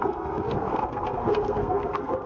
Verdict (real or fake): fake